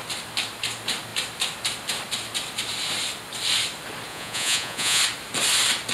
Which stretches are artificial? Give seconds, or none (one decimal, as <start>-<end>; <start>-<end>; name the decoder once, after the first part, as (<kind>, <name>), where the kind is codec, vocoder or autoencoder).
4.1-5.0 (vocoder, Vocos)